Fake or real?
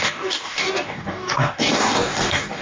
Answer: fake